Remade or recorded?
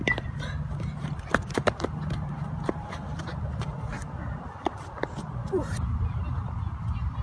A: remade